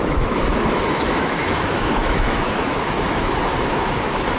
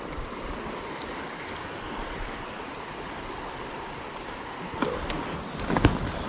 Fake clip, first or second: first